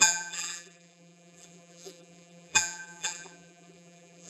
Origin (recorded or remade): remade